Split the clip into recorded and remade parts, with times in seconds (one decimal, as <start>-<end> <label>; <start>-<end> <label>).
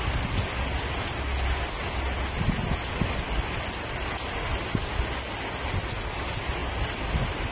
0.0-7.5 recorded